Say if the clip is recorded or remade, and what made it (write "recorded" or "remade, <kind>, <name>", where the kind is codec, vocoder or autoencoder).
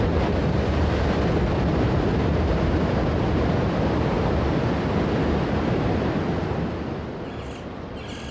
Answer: recorded